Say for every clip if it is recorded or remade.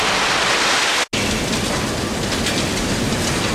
recorded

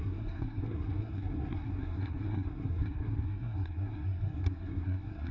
remade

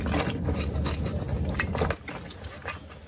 recorded